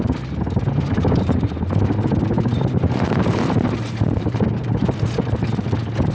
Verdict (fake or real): fake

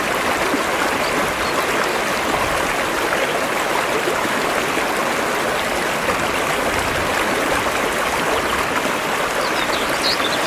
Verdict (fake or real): real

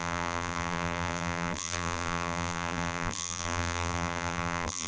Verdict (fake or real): fake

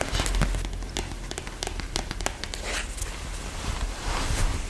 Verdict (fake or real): real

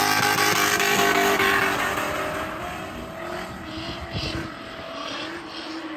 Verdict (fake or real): real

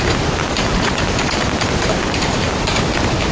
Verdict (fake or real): fake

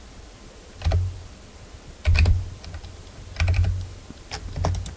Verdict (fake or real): fake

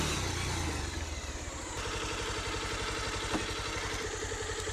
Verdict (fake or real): real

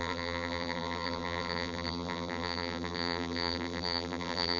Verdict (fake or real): fake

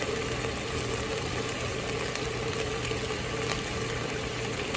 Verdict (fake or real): real